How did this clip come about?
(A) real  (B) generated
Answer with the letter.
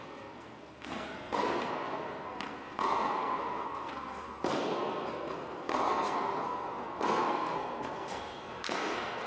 B